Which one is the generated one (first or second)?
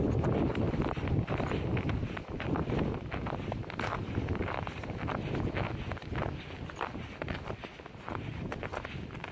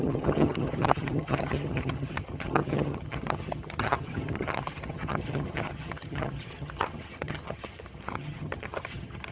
second